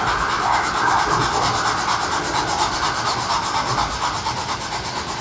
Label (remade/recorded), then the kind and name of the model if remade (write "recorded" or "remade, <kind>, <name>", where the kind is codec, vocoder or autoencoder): recorded